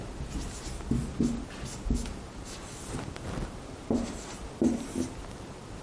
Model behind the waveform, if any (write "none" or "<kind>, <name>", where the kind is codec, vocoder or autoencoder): none